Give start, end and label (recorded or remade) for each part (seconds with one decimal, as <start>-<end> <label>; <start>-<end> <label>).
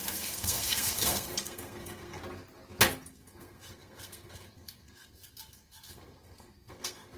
0.0-2.2 remade; 2.2-3.1 recorded; 3.1-7.2 remade